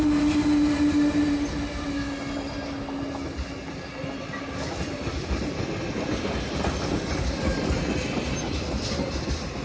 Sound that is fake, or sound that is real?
real